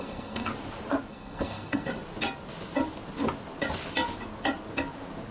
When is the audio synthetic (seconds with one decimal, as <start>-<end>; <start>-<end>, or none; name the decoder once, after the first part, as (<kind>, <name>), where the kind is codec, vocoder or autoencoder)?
0.0-0.5 (codec, SNAC); 1.1-1.9